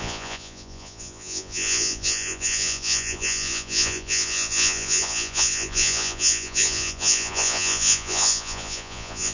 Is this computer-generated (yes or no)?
yes